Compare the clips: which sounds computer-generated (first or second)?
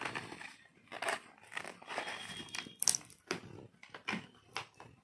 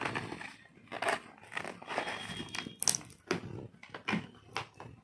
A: first